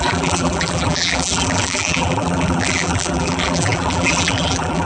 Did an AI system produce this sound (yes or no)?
yes